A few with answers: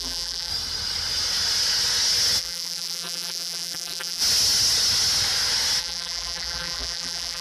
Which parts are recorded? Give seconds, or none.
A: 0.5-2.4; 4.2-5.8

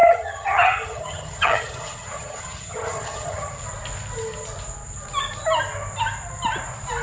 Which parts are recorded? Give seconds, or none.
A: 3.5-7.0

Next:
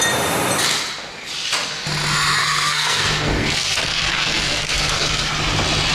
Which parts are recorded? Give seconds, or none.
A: 0.0-2.4; 5.3-5.9

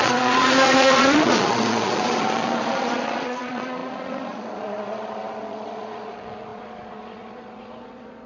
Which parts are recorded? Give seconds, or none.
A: none

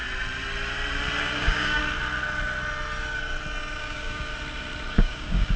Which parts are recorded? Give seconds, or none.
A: 0.0-1.2; 1.8-3.8; 4.3-4.9